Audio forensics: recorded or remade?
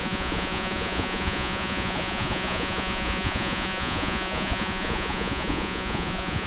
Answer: remade